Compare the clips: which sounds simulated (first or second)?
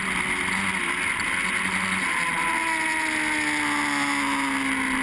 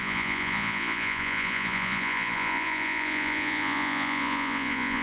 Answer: second